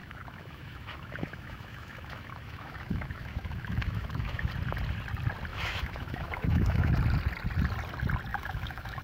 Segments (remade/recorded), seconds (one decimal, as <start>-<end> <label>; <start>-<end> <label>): 0.0-4.5 remade; 4.5-5.5 recorded; 5.5-6.9 remade; 6.9-8.3 recorded; 8.3-9.0 remade